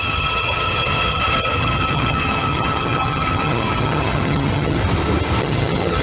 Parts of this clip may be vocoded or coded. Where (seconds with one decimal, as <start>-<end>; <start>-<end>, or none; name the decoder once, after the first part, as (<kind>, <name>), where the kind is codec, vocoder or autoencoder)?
0.0-4.8 (vocoder, HiFi-GAN); 5.4-6.0

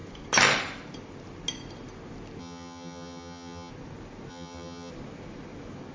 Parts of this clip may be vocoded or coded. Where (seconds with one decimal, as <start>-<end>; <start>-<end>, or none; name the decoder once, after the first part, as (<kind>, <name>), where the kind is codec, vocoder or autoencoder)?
2.4-3.7 (vocoder, HiFi-GAN); 4.3-4.9

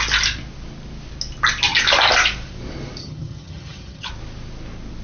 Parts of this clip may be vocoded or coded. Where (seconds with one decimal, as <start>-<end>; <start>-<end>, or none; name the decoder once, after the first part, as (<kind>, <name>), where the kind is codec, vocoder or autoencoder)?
3.0-4.1 (vocoder, HiFi-GAN)

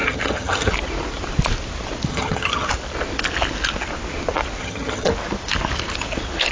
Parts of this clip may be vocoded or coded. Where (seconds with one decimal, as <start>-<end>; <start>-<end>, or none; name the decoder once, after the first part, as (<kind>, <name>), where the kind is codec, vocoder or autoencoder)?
0.0-0.7 (vocoder, HiFi-GAN); 2.1-2.7; 4.6-5.1

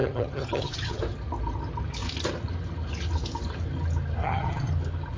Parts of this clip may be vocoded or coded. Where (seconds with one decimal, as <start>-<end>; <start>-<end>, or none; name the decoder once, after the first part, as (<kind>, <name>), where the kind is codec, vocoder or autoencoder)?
0.0-1.0 (vocoder, HiFi-GAN); 4.2-4.7

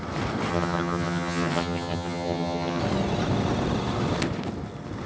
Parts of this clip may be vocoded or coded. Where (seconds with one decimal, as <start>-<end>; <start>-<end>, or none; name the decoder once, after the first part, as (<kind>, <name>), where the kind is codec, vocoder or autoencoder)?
0.5-2.8 (vocoder, HiFi-GAN)

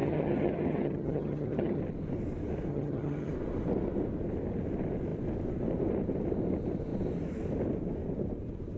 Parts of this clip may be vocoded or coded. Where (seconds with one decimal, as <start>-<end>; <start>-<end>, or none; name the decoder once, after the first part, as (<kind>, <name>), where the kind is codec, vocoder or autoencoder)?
0.0-1.8 (vocoder, HiFi-GAN); 2.7-3.3

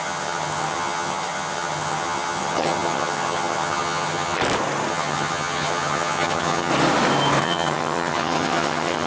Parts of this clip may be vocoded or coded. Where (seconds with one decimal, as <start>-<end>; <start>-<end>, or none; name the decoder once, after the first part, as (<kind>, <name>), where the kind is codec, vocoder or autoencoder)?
0.0-4.4 (vocoder, HiFi-GAN); 4.9-6.7; 7.4-9.1